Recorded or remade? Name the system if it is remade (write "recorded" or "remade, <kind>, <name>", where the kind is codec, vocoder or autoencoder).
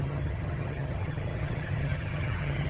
remade, vocoder, HiFi-GAN